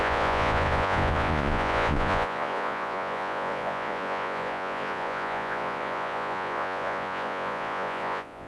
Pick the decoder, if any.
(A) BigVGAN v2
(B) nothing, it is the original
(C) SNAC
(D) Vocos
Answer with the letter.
D